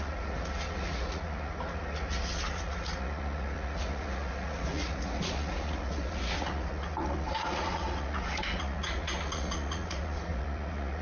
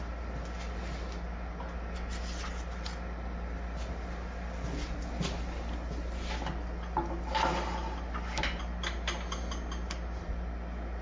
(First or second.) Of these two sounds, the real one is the second